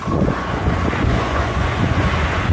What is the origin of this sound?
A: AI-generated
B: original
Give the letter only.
A